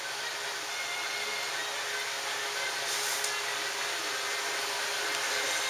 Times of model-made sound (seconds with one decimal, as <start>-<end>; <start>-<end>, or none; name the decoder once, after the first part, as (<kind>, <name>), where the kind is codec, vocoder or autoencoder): none